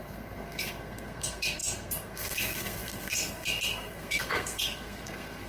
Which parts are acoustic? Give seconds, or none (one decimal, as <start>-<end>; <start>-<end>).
none